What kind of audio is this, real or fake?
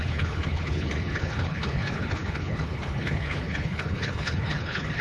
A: fake